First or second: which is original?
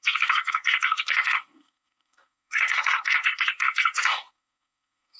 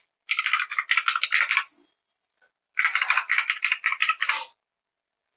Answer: second